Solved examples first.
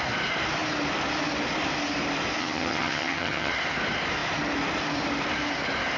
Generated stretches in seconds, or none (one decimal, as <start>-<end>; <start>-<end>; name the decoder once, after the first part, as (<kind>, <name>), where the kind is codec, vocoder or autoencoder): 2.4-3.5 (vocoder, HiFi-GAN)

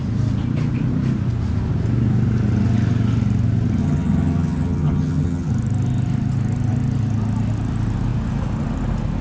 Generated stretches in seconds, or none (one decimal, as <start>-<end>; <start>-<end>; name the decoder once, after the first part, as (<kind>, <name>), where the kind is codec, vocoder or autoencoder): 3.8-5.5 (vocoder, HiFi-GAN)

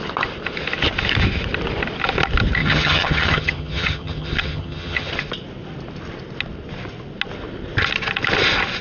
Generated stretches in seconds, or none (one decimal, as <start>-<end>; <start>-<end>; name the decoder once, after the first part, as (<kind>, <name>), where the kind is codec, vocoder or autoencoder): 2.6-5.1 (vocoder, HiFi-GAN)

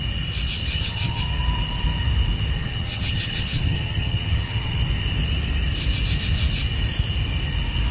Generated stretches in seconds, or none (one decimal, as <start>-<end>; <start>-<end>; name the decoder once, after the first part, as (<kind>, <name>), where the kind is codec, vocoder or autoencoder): 0.6-1.2 (vocoder, HiFi-GAN); 2.6-4.8

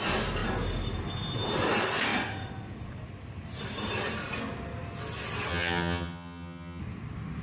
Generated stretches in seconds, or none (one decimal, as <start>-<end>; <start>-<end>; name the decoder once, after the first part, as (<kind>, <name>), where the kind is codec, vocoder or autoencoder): 5.5-6.8 (vocoder, HiFi-GAN)

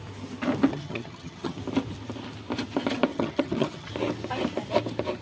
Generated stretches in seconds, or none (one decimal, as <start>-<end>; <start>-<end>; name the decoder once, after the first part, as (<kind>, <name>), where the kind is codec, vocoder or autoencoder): 0.7-1.6 (vocoder, HiFi-GAN); 3.1-3.9

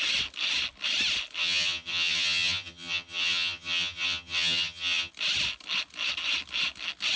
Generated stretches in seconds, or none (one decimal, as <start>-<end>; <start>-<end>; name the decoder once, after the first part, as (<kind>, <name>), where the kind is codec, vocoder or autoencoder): 1.4-5.1 (vocoder, HiFi-GAN)

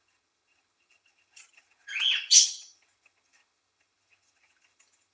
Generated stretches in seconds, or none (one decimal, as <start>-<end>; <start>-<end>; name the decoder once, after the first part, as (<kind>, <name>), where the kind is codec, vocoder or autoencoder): 0.0-5.1 (vocoder, HiFi-GAN)